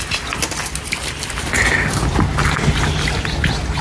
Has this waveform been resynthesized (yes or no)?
no